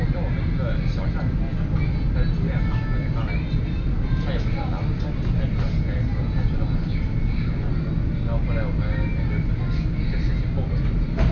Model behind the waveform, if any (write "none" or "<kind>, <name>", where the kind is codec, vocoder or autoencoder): none